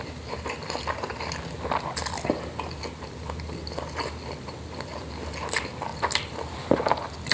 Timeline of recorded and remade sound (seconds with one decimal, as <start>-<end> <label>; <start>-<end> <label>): 0.0-7.3 recorded